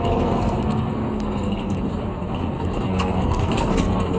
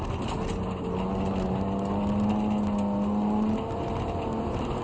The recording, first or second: second